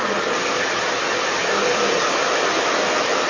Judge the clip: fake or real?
real